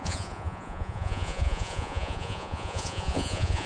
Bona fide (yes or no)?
no